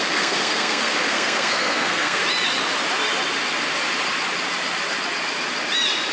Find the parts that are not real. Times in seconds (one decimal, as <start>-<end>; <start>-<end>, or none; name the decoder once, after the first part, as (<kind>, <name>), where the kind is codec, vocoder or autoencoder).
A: 0.0-2.2 (codec, SNAC)